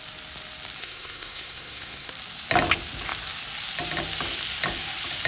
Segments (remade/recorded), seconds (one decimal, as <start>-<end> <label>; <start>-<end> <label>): 0.0-0.8 recorded; 0.8-2.1 remade; 2.1-5.3 recorded